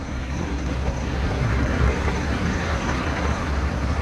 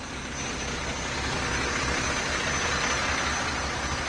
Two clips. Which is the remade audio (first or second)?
first